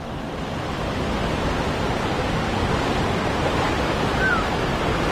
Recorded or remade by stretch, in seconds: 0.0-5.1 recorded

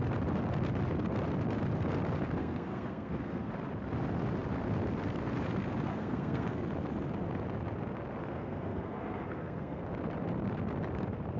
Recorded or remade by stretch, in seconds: 0.0-2.4 recorded; 2.4-3.5 remade; 3.5-5.9 recorded; 5.9-6.6 remade; 6.6-8.2 recorded; 8.2-9.8 remade; 9.8-11.4 recorded

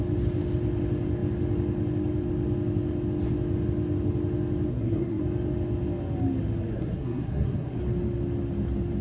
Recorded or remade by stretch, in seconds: 0.0-4.7 recorded; 4.7-5.2 remade; 5.2-6.7 recorded; 6.7-7.8 remade; 7.8-9.0 recorded

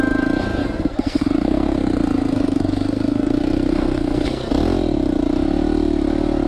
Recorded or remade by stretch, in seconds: 0.0-0.6 recorded; 0.6-4.5 remade; 4.5-6.5 recorded